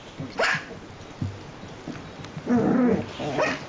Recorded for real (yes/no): yes